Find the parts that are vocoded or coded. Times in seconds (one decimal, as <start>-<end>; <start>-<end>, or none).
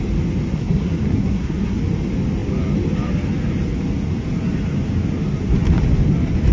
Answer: 0.5-1.8